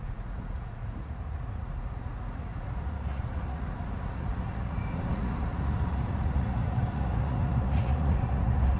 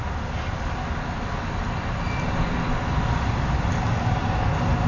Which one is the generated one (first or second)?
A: first